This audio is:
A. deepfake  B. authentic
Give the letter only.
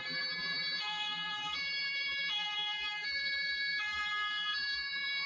A